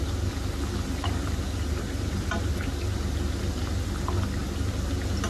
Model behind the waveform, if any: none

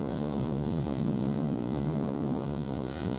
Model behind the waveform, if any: vocoder, Vocos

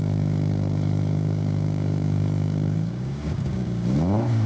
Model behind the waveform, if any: codec, DAC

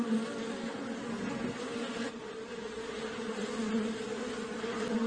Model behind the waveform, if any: none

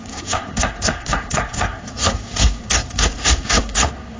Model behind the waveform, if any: codec, SNAC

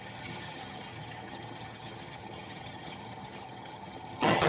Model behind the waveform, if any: vocoder, HiFi-GAN